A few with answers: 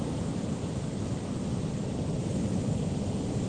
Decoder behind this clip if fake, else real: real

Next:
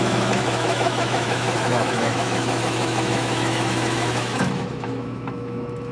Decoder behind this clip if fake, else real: fake, autoencoder, DAC-VAE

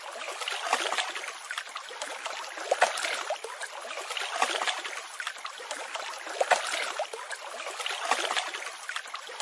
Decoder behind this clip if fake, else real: real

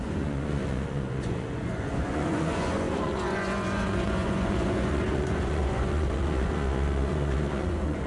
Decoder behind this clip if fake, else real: fake, vocoder, Vocos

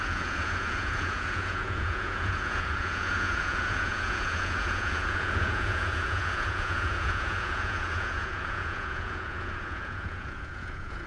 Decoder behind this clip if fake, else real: fake, vocoder, Vocos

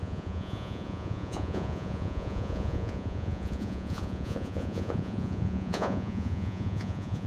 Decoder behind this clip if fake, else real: fake, vocoder, Vocos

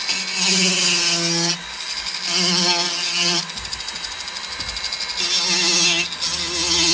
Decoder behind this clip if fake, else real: real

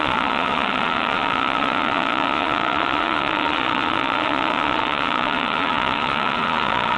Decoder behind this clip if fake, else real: fake, vocoder, Vocos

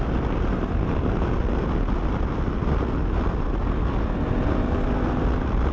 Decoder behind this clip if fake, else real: real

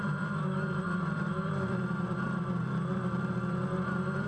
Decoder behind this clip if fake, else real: fake, vocoder, BigVGAN v2